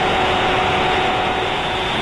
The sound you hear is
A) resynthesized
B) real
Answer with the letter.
A